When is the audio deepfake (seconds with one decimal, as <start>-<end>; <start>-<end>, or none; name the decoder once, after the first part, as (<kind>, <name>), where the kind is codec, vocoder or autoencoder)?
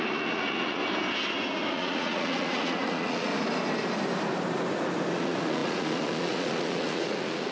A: 0.0-0.8 (vocoder, Vocos); 1.7-3.3; 5.1-7.5